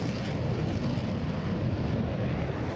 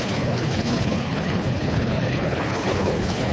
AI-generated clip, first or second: second